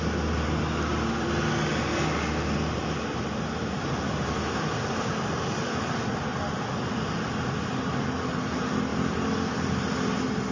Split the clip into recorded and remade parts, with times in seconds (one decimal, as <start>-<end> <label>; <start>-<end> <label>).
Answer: 0.0-10.5 recorded